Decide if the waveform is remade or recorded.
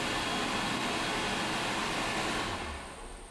recorded